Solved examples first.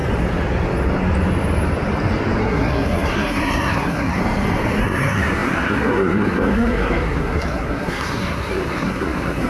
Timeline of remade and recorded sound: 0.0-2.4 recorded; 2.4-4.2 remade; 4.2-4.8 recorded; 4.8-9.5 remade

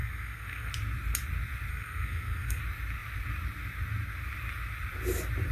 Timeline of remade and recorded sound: 0.0-0.7 remade; 0.7-1.7 recorded; 1.7-2.6 remade; 2.6-5.5 recorded

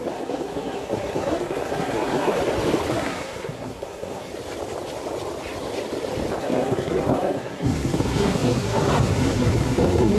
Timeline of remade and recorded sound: 0.0-2.4 remade; 2.4-2.9 recorded; 2.9-4.3 remade; 4.3-6.4 recorded; 6.4-10.2 remade

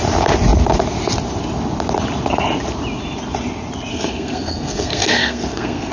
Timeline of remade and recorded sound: 0.0-3.9 recorded; 3.9-5.9 remade

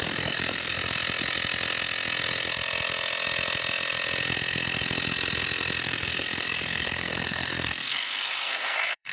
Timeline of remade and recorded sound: 0.0-0.8 remade; 0.8-5.8 recorded; 5.8-9.1 remade

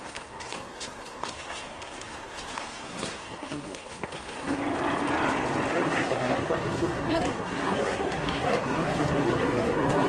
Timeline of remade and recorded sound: 0.0-4.6 remade; 4.6-5.7 recorded; 5.7-10.1 remade

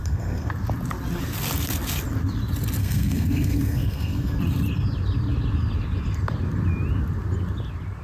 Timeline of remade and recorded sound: 0.0-0.5 remade; 0.5-2.8 recorded; 2.8-4.4 remade; 4.4-8.0 recorded

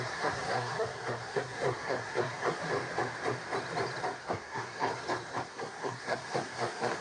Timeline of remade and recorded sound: 0.0-2.6 remade; 2.6-4.2 recorded; 4.2-4.9 remade; 4.9-5.5 recorded; 5.5-7.0 remade